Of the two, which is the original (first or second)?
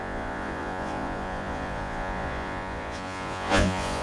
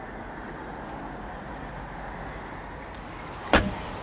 second